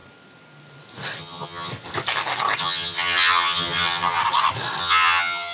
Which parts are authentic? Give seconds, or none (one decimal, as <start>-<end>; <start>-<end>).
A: 0.0-1.2; 1.7-2.6; 4.2-4.8

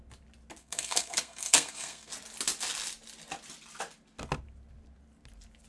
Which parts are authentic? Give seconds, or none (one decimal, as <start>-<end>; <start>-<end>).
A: 0.0-0.6; 2.1-5.7

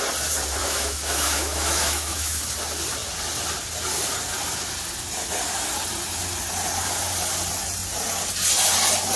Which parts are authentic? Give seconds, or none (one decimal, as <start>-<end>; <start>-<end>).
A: 0.0-0.6; 2.4-9.2

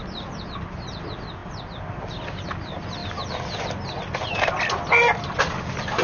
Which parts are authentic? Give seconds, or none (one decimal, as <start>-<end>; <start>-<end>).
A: 1.4-2.1; 3.0-5.4

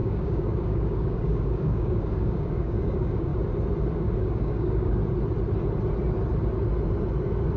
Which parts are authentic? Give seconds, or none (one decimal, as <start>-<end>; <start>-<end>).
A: 3.3-3.9; 5.0-7.6

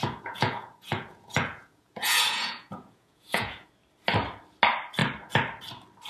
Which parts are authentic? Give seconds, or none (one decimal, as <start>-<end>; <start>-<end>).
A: 3.7-6.1

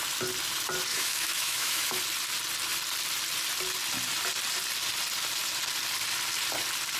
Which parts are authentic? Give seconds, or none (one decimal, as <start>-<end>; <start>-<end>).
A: 0.0-0.9; 2.0-7.0